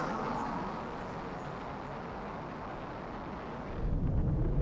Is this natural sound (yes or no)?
yes